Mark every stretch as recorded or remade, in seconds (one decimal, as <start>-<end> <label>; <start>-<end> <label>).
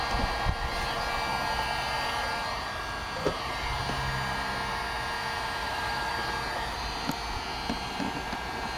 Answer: 0.0-5.6 recorded; 5.6-6.1 remade; 6.1-8.8 recorded